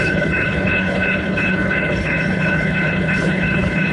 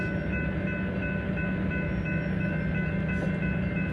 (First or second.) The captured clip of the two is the second